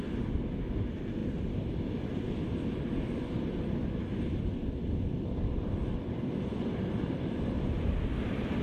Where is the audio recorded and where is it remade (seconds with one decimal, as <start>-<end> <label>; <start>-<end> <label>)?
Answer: 0.0-4.1 recorded; 4.1-8.6 remade